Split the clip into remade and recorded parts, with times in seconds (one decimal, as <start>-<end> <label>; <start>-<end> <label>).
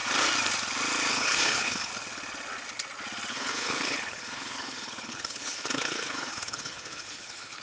0.0-1.1 recorded; 1.1-1.9 remade; 1.9-3.3 recorded; 3.3-7.6 remade